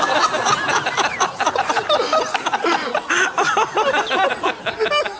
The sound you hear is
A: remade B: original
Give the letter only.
B